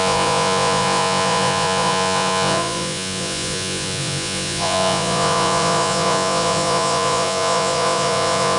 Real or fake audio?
fake